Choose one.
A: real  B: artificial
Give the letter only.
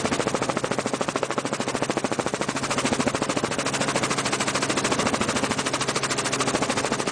A